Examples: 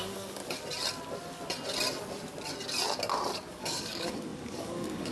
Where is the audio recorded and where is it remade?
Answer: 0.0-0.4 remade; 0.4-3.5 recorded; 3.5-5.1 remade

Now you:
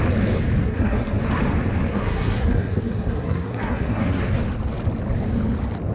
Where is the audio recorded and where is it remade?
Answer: 0.0-0.6 recorded; 0.6-1.2 remade; 1.2-1.9 recorded; 1.9-4.2 remade; 4.2-5.9 recorded